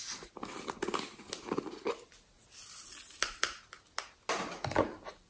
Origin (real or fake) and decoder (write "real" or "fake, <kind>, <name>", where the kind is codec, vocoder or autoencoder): real